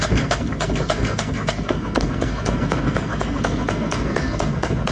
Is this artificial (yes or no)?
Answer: yes